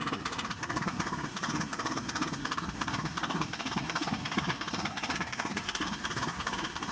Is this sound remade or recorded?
remade